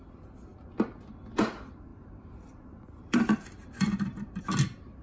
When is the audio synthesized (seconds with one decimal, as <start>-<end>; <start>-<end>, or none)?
1.9-4.4